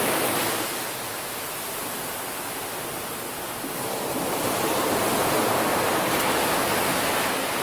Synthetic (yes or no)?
no